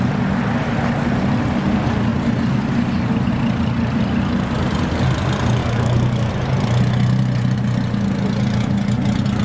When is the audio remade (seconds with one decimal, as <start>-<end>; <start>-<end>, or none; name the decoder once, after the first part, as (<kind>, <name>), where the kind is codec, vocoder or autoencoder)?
5.6-6.3 (codec, DAC)